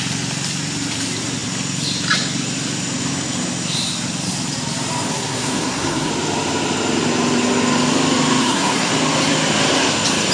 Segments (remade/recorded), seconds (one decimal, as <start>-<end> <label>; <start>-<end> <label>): 0.0-5.1 recorded; 5.1-6.1 remade; 6.1-8.4 recorded; 8.4-8.9 remade; 8.9-10.3 recorded